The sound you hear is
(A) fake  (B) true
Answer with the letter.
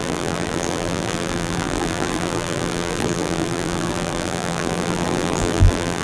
A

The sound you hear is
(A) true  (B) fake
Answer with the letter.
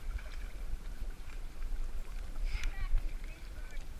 B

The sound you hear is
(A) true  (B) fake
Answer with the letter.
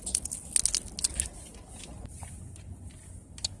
A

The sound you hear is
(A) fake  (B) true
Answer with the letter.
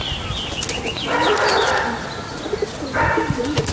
B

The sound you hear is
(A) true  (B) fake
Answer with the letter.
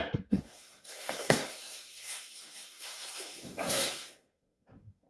B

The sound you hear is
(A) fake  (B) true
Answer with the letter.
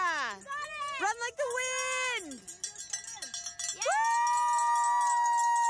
B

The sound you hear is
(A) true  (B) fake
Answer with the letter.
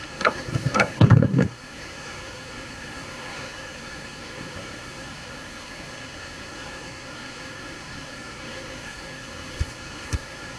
B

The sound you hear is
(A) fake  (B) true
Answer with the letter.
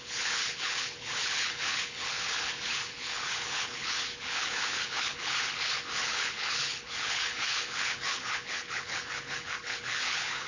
A